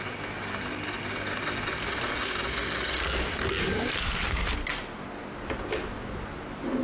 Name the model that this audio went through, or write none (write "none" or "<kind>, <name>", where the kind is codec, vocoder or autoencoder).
none